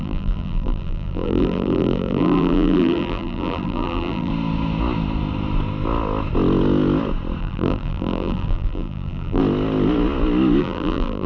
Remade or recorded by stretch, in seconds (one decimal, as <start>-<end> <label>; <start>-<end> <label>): 0.0-4.3 remade; 4.3-7.4 recorded; 7.4-9.4 remade; 9.4-10.6 recorded; 10.6-11.3 remade